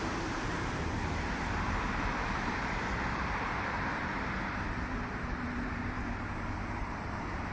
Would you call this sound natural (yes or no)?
no